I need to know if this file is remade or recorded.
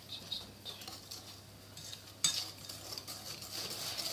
recorded